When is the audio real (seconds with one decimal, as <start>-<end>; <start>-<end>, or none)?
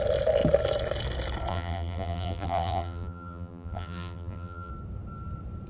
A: 0.0-1.5; 4.7-5.7